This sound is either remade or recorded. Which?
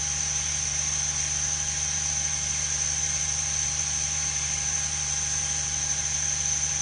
recorded